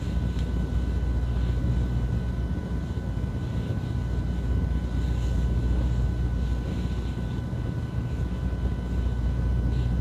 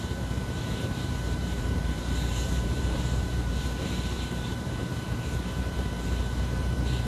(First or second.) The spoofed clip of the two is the second